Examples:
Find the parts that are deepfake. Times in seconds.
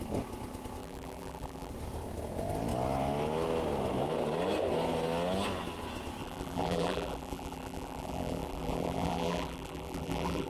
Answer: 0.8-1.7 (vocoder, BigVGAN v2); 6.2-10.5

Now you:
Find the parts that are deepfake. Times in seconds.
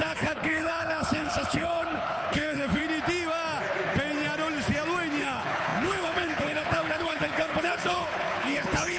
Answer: 0.0-2.8 (codec, HILCodec); 5.2-9.0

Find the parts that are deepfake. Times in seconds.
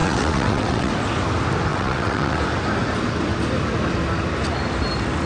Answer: 0.0-0.9 (vocoder, WaveNeXt); 1.7-2.4